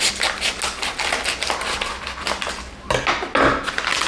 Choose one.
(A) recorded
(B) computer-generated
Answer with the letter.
A